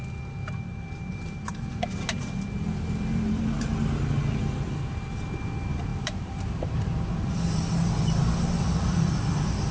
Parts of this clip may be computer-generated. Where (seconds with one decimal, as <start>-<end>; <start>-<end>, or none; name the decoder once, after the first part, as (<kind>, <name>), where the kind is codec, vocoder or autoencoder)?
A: 0.7-3.6 (vocoder, BigVGAN v2); 5.9-7.5